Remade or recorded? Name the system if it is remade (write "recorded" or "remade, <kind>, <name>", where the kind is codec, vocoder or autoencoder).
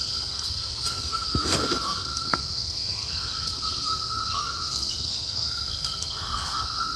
remade, codec, SNAC